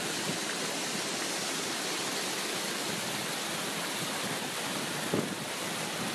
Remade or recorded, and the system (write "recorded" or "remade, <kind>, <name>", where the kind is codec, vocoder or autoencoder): recorded